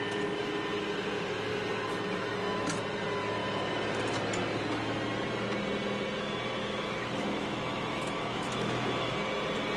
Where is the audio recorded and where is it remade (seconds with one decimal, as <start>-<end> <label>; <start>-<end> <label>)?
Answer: 0.0-6.6 recorded; 6.6-9.1 remade; 9.1-9.8 recorded